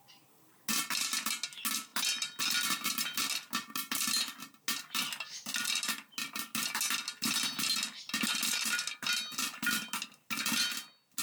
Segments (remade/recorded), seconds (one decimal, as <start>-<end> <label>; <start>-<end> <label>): 0.0-11.2 recorded